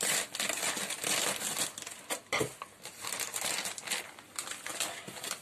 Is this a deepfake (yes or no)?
no